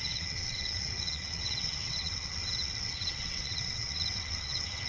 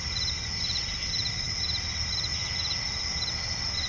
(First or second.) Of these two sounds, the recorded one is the second